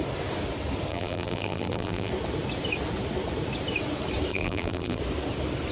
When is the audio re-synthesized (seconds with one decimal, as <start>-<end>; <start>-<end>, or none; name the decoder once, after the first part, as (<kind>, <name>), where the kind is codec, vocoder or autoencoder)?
0.9-2.1 (vocoder, BigVGAN v2); 4.3-5.0